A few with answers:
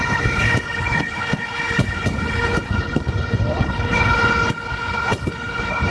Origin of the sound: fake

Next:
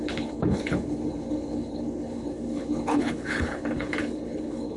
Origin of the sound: fake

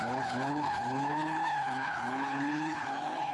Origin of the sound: fake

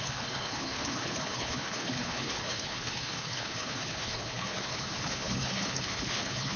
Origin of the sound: fake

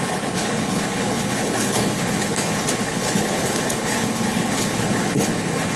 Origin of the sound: fake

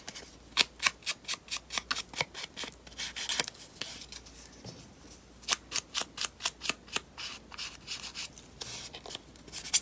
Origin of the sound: real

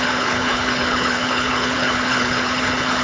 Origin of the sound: fake